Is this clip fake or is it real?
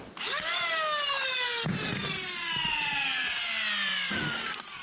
real